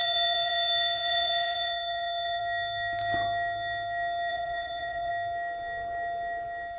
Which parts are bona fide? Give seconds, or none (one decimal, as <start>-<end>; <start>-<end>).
2.4-4.3; 5.1-6.8